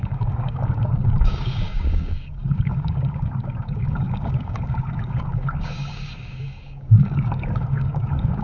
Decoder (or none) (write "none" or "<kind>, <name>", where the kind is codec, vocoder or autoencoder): codec, DAC